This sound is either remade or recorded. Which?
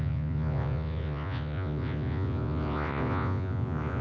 remade